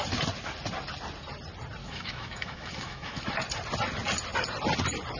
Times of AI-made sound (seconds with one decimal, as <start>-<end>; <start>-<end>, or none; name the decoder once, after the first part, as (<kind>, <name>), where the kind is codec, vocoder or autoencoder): 1.8-3.2 (autoencoder, DAC-VAE)